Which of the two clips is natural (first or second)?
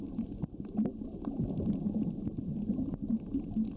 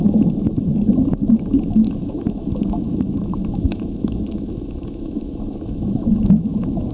first